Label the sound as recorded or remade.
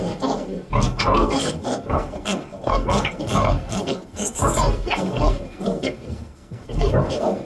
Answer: remade